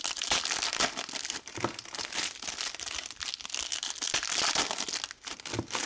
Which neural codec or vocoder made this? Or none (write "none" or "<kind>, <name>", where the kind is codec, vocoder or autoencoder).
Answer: none